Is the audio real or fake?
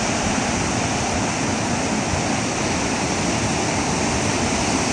fake